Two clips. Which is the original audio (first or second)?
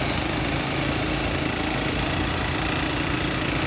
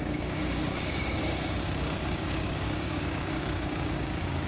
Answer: first